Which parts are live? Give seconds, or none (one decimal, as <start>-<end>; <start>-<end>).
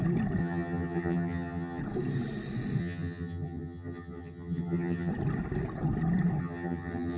0.0-0.4; 1.8-2.8; 5.1-6.4